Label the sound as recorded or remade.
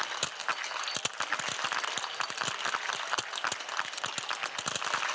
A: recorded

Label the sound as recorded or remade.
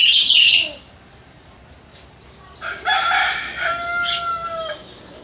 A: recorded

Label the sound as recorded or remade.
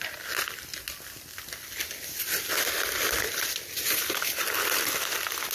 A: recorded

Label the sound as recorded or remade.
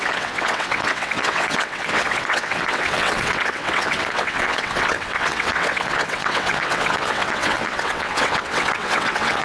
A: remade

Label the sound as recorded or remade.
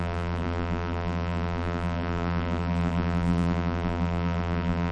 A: remade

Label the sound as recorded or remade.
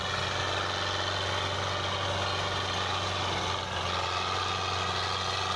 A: recorded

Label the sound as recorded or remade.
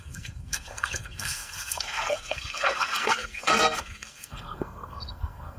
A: remade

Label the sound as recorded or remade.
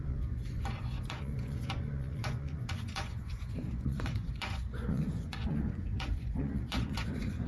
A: remade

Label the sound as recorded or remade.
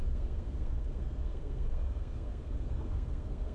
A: remade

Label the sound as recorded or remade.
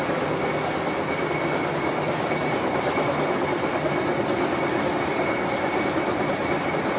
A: recorded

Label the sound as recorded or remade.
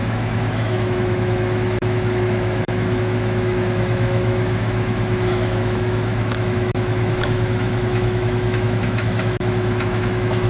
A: remade